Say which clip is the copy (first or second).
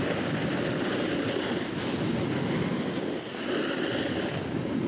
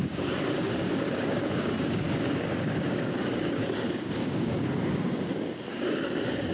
second